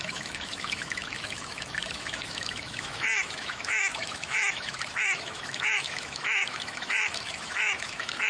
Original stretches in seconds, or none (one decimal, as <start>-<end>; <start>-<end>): none